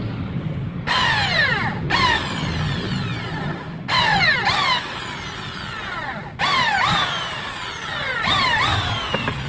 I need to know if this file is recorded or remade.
recorded